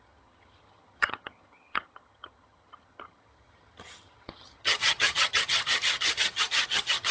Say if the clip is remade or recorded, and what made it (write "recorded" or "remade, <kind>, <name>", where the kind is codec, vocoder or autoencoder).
remade, vocoder, HiFi-GAN